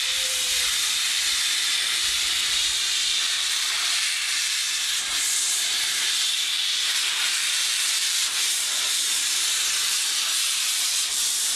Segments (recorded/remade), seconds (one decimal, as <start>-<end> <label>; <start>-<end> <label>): 0.0-4.6 remade; 4.6-6.3 recorded; 6.3-11.6 remade